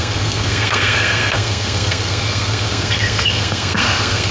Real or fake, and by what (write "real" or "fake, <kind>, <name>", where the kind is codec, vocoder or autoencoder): fake, codec, SNAC